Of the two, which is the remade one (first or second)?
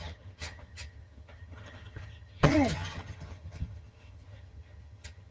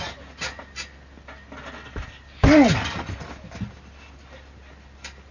first